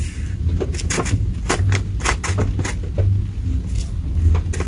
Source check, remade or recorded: recorded